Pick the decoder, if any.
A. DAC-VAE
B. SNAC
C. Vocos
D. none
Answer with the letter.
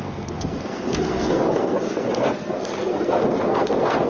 B